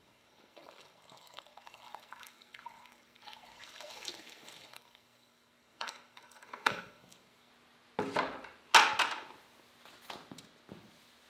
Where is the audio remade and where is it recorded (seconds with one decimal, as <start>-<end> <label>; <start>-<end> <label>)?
0.0-7.5 remade; 7.5-11.3 recorded